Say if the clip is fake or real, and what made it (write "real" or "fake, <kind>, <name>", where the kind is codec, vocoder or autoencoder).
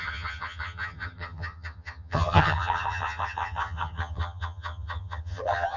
fake, vocoder, HiFi-GAN